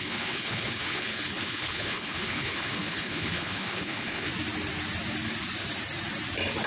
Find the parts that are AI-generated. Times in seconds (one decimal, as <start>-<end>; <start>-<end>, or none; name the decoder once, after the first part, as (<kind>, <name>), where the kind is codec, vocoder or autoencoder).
0.0-4.3 (codec, HILCodec)